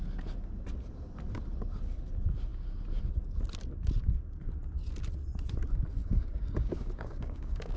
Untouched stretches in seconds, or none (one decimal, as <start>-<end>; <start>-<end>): 0.0-6.0